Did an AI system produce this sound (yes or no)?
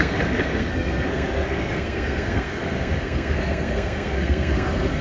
yes